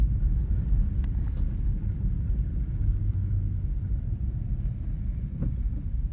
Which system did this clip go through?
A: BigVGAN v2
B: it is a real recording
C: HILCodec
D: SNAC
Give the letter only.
B